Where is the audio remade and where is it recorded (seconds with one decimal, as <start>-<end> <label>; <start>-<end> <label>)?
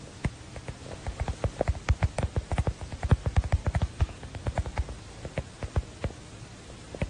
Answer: 0.0-3.6 recorded; 3.6-4.4 remade; 4.4-7.1 recorded